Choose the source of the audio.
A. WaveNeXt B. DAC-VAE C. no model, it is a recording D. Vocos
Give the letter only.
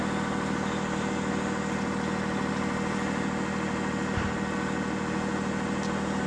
C